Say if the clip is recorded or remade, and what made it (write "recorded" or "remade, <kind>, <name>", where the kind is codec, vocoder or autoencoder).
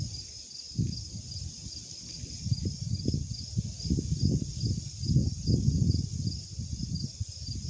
recorded